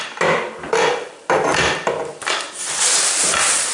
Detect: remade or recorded recorded